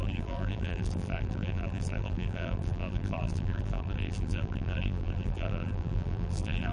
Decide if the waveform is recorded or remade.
remade